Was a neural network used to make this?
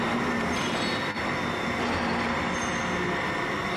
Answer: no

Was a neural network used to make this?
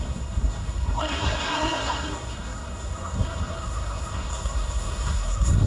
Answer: yes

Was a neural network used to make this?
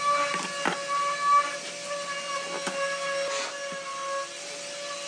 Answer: no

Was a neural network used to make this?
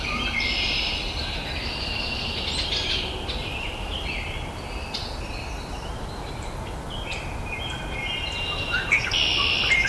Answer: no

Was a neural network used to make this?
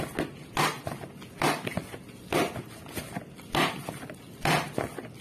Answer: no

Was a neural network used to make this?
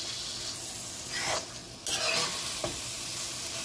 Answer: no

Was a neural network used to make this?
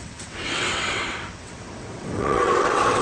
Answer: yes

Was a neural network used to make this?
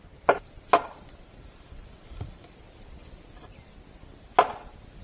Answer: no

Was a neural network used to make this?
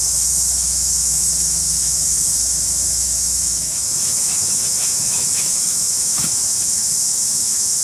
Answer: yes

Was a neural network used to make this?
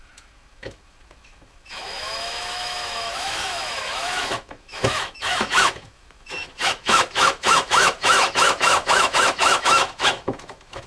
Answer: yes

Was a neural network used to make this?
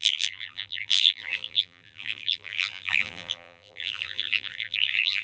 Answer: yes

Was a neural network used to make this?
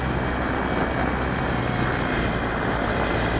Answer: no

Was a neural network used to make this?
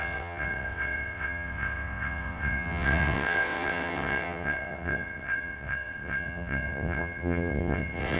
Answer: yes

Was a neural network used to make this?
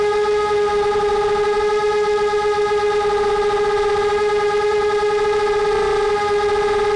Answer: no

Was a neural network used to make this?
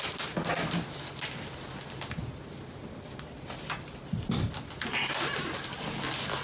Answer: no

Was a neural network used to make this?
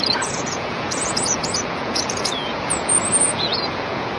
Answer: yes